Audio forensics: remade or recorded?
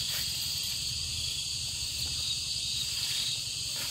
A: remade